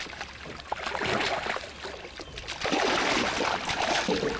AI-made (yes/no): no